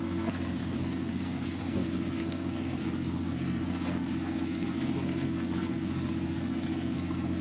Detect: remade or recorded remade